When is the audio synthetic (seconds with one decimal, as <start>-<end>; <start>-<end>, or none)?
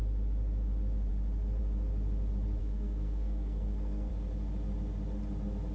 2.6-4.1